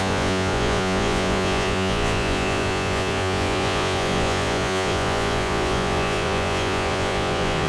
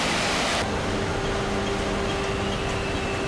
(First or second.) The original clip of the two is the second